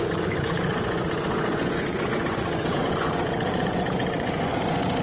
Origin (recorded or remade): remade